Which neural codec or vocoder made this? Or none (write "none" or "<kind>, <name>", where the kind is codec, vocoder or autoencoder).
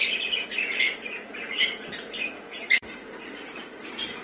vocoder, Vocos